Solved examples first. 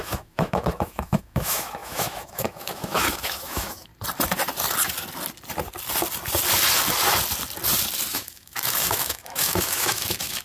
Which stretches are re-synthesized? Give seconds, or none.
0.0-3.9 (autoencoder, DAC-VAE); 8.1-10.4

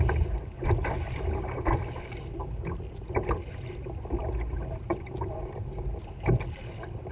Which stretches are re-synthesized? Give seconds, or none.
none

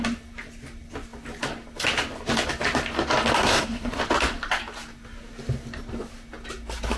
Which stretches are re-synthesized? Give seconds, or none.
3.4-4.0 (codec, SNAC)